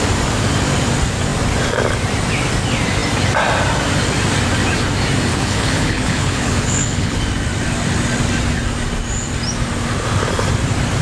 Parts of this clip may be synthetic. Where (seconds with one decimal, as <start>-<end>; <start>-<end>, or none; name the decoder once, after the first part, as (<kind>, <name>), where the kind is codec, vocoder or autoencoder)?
5.3-7.2 (codec, HILCodec)